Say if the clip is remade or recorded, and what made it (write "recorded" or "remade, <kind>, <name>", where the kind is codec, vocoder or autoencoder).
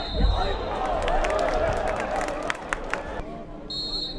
recorded